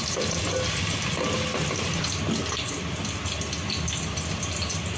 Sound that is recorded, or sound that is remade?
recorded